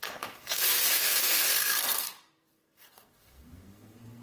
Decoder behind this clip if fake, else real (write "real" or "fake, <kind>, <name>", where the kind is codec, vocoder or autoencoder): fake, codec, SNAC